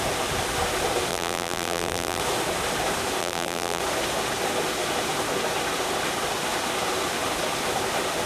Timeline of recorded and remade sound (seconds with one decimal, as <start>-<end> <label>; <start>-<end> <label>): 0.0-1.1 recorded; 1.1-2.2 remade; 2.2-3.2 recorded; 3.2-3.8 remade; 3.8-8.3 recorded